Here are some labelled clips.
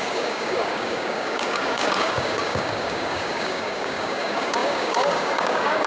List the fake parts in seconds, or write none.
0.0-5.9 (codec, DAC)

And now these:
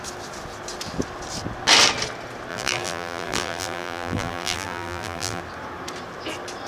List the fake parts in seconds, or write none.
2.5-5.4 (vocoder, BigVGAN v2)

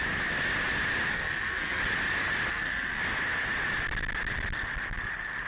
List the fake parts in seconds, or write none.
1.1-1.8 (codec, SNAC); 2.5-3.0

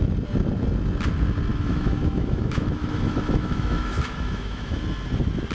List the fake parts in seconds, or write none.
1.5-4.8 (autoencoder, DAC-VAE)

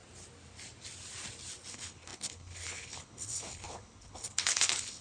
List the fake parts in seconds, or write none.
1.7-5.0 (codec, HILCodec)

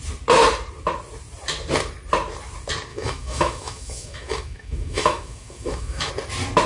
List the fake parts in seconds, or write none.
2.9-6.1 (autoencoder, DAC-VAE)

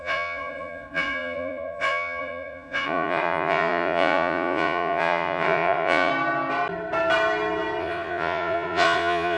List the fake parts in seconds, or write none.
0.0-6.1 (vocoder, Vocos); 7.8-9.4

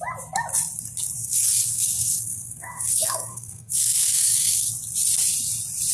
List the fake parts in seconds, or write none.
1.2-4.7 (codec, SNAC)